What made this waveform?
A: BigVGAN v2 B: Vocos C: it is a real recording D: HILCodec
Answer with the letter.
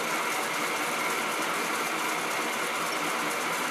C